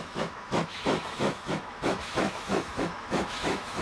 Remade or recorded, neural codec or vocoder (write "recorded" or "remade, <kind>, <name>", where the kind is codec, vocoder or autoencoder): remade, autoencoder, DAC-VAE